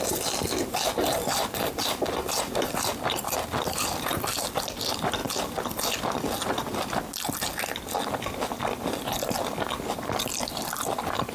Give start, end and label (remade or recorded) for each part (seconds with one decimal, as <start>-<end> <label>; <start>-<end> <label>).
0.0-11.3 recorded